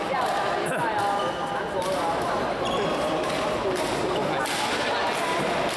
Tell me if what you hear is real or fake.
real